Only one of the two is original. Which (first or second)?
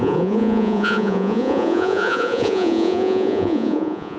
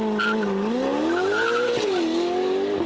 second